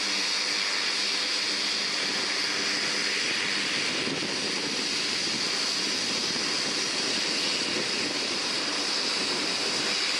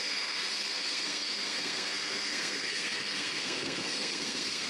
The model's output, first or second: second